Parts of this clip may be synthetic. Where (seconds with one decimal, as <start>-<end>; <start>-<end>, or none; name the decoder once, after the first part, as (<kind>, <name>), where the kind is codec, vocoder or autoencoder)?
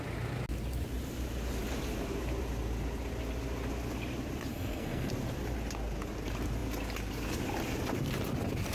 4.5-5.1 (codec, SNAC)